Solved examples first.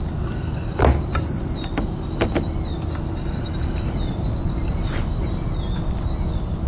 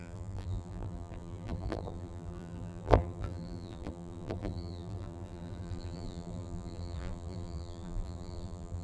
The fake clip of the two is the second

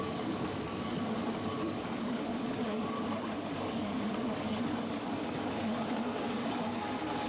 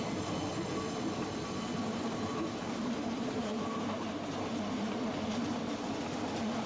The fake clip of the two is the first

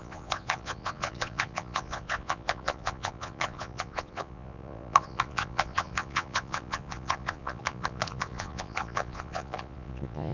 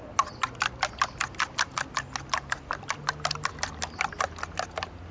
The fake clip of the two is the first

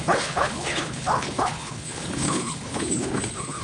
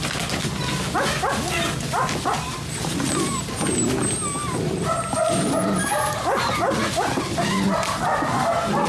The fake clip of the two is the first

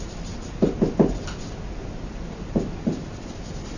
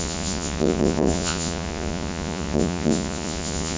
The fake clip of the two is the second